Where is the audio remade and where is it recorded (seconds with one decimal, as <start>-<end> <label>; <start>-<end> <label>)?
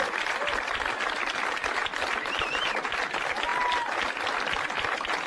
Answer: 0.0-3.5 recorded; 3.5-4.2 remade; 4.2-5.3 recorded